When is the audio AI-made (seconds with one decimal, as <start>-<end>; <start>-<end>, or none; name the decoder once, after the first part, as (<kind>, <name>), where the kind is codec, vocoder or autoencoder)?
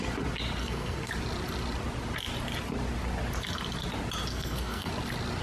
0.6-1.1 (codec, SNAC); 4.3-4.9